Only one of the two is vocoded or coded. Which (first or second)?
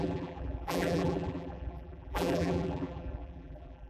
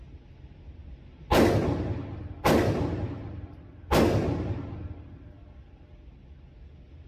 first